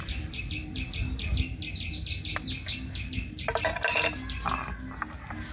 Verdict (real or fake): real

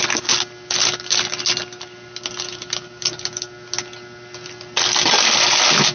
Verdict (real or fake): real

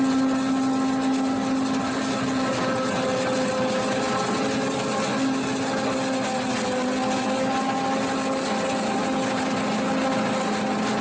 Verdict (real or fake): real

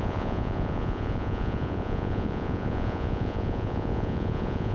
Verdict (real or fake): fake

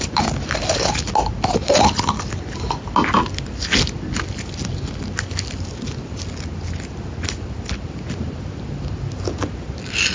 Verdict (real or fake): real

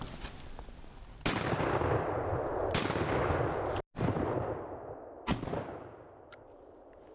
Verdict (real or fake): real